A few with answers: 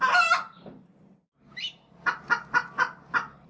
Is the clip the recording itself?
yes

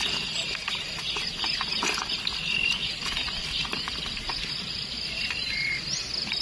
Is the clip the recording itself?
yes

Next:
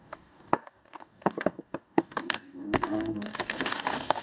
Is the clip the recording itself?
no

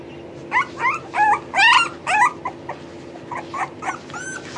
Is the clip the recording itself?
yes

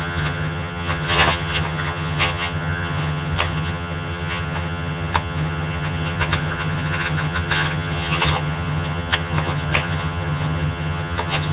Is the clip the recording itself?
no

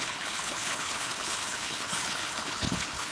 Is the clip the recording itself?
no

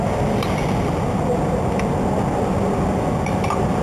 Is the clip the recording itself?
yes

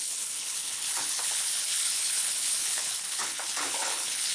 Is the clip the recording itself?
no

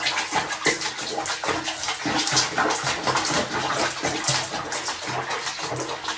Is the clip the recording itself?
yes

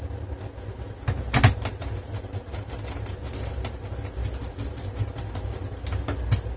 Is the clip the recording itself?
yes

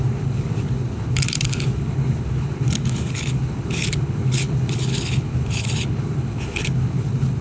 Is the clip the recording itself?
no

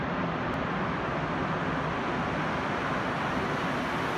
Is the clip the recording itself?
no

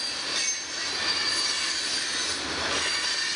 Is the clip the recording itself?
yes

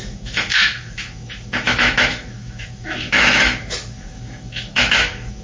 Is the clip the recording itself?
no